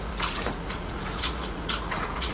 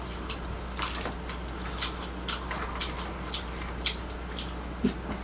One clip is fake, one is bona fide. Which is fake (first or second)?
first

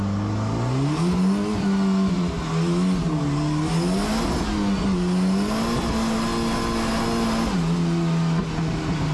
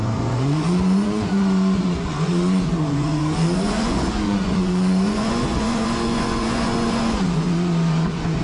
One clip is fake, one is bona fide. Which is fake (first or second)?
second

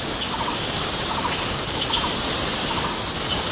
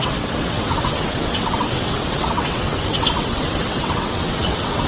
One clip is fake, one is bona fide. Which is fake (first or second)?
second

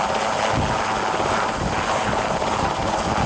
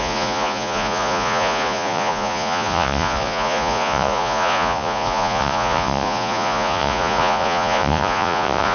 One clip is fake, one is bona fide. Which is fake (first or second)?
second